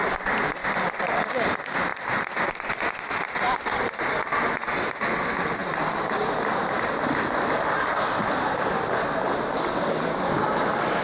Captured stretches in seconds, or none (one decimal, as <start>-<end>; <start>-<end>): 0.0-11.0